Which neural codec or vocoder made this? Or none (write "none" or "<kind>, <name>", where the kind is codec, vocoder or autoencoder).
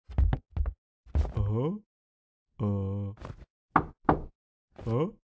none